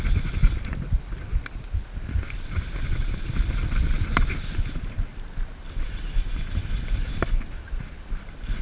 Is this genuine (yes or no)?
yes